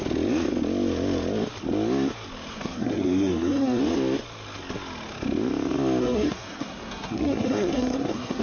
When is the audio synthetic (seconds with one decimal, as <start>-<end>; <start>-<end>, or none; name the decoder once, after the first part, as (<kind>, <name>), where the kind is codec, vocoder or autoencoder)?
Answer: 2.5-3.8 (codec, SNAC); 6.0-8.4